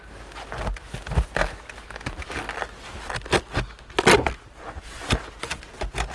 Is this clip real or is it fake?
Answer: real